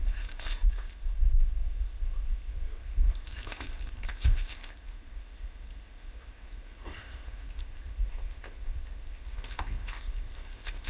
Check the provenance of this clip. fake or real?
fake